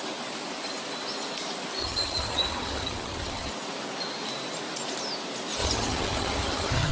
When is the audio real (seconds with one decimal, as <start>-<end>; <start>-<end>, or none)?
0.0-1.8; 3.5-5.6

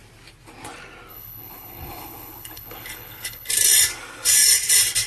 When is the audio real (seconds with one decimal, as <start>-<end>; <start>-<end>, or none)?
0.0-1.1; 3.5-5.1

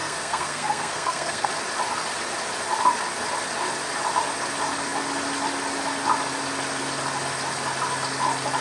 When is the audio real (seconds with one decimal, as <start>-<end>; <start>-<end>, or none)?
1.5-8.6

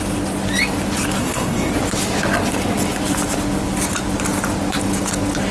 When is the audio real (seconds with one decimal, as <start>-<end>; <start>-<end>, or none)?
0.0-1.2; 1.7-5.5

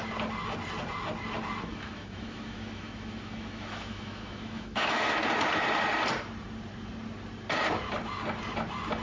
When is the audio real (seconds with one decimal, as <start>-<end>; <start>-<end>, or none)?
0.0-1.7; 5.1-9.0

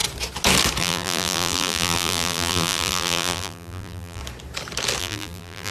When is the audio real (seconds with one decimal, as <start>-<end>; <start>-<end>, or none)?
0.0-0.8; 4.2-5.0

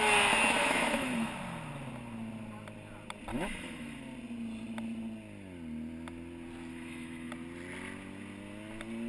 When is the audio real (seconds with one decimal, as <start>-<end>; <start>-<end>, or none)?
0.0-0.6; 1.3-3.3; 4.0-6.7; 7.3-9.1

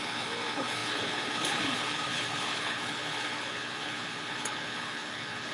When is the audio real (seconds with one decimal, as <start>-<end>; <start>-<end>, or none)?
none